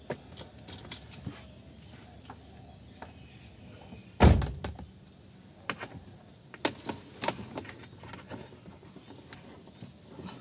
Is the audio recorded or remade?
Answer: recorded